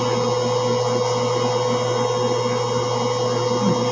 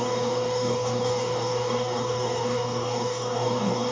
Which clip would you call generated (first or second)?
second